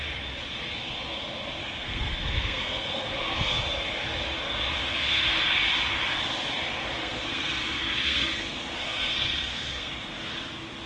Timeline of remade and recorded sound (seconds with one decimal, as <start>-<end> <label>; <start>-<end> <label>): 0.0-1.6 recorded; 1.6-3.6 remade; 3.6-4.9 recorded; 4.9-5.4 remade; 5.4-7.0 recorded; 7.0-9.9 remade; 9.9-10.9 recorded